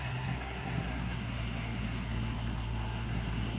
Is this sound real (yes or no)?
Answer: no